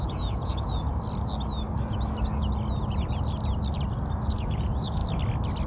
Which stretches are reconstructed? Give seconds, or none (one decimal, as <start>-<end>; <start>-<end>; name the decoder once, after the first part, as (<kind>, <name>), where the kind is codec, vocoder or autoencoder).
0.0-0.9 (vocoder, Vocos); 4.3-5.0